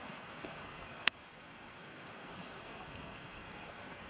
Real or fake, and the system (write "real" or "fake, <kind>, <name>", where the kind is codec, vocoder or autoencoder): fake, codec, SNAC